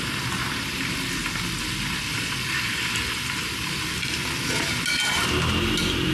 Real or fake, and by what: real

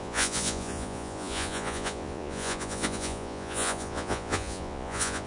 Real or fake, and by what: fake, vocoder, Vocos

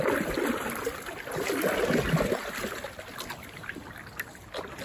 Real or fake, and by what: real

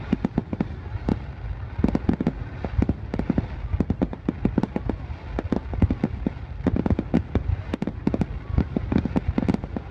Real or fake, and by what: real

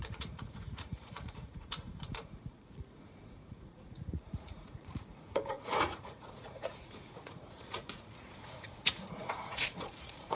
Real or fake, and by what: fake, vocoder, Vocos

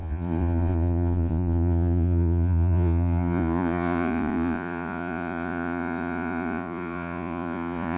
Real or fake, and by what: fake, vocoder, Vocos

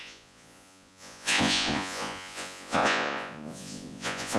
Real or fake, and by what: fake, vocoder, Vocos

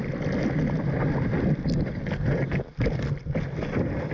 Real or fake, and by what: real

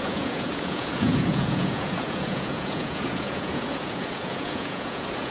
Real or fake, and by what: fake, vocoder, Vocos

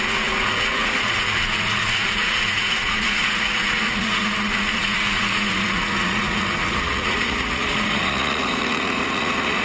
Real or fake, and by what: fake, vocoder, Vocos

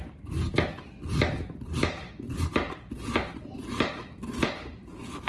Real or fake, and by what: real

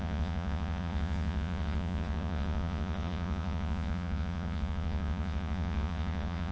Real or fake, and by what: fake, vocoder, Vocos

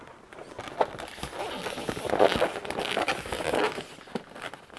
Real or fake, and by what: real